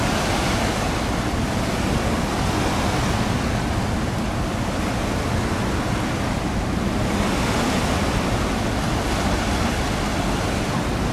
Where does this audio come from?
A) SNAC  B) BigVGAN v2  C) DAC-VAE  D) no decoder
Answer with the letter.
D